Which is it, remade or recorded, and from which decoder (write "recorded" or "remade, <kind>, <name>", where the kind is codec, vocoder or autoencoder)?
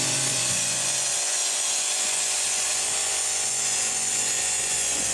remade, vocoder, Vocos